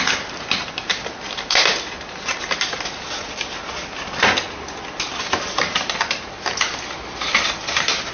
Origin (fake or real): real